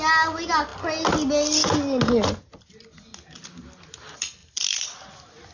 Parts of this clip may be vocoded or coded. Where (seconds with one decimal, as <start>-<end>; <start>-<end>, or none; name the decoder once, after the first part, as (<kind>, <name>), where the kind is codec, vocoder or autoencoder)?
4.4-5.1 (vocoder, BigVGAN v2)